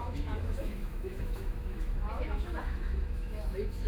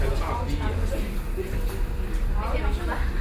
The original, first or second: second